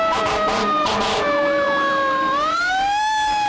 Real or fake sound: fake